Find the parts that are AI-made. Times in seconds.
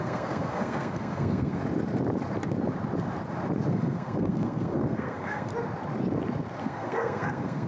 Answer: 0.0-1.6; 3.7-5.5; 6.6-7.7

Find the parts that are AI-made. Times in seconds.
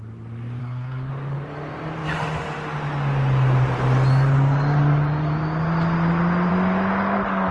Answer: 0.6-1.1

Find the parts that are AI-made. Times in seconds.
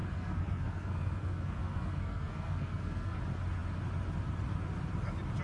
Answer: 0.0-3.2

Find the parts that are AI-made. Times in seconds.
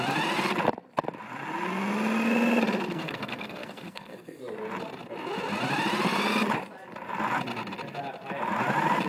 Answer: 2.9-4.4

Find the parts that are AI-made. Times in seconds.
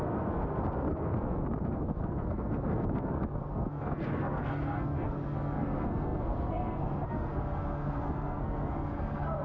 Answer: 0.0-9.4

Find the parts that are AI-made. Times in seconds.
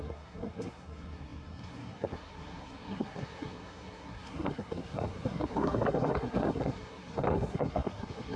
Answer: 0.0-8.4